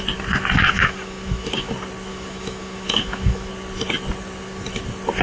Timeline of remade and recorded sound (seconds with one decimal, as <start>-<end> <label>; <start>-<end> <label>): 0.0-0.8 recorded; 0.8-1.7 remade; 1.7-2.1 recorded; 2.1-3.5 remade; 3.5-5.2 recorded